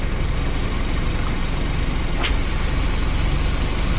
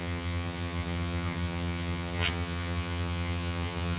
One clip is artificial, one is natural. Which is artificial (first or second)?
second